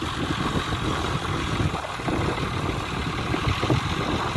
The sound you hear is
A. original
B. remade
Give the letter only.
A